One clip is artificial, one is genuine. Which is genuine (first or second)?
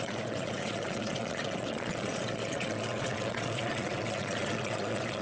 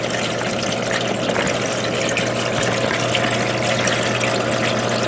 second